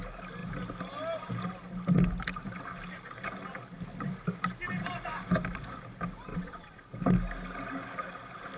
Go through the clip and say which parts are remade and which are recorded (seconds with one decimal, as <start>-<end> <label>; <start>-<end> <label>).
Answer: 0.0-6.3 recorded; 6.3-6.8 remade; 6.8-8.6 recorded